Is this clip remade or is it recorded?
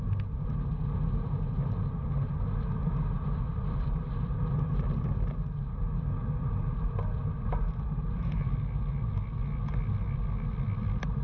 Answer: recorded